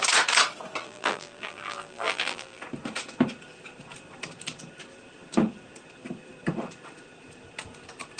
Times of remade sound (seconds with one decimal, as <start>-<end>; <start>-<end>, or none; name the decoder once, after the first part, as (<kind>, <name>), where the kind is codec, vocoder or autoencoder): 0.8-2.6 (vocoder, BigVGAN v2)